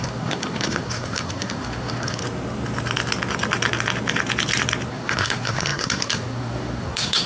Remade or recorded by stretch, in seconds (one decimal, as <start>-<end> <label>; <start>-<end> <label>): 0.0-2.2 remade; 2.2-4.9 recorded; 4.9-7.3 remade